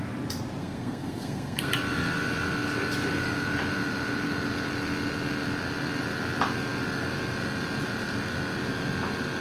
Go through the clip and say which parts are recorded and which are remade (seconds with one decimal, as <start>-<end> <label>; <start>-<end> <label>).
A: 0.0-0.6 recorded; 0.6-1.7 remade; 1.7-9.4 recorded